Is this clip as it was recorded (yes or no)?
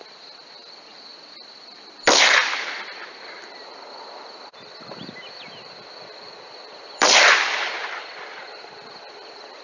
yes